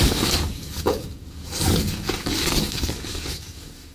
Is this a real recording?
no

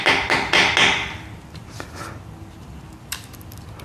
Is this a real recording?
yes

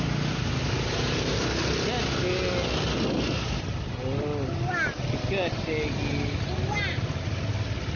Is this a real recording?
yes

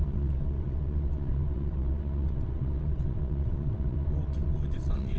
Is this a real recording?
no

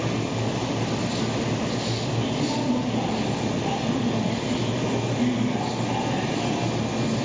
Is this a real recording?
yes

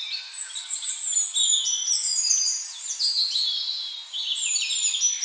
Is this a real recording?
yes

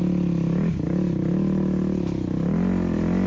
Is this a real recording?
yes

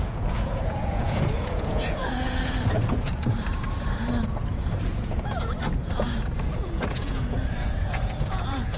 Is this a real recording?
no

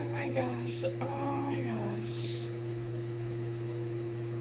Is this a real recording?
no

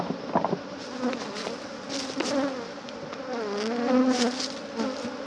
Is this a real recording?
yes